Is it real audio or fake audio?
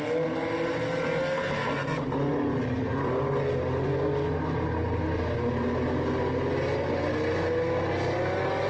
real